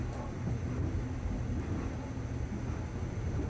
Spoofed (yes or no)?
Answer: no